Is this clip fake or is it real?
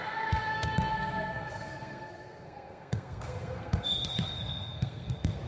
fake